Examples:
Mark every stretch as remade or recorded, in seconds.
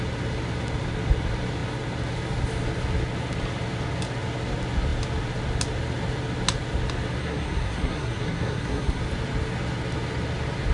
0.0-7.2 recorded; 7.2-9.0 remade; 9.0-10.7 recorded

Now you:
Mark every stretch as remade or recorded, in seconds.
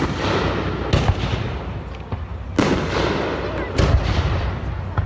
0.0-5.1 recorded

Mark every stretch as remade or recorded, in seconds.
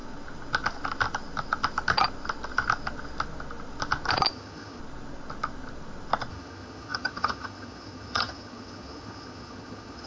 0.0-4.3 recorded; 4.3-4.8 remade; 4.8-6.3 recorded; 6.3-10.1 remade